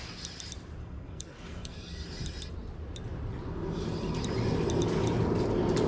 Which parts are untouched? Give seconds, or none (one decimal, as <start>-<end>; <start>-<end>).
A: 0.0-0.8; 1.8-5.9